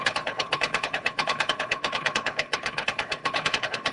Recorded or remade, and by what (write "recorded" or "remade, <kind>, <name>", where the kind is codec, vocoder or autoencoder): remade, codec, HILCodec